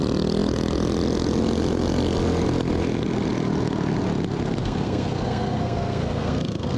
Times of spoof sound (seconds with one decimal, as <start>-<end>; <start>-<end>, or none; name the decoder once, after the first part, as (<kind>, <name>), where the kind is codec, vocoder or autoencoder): 4.6-6.8 (codec, SNAC)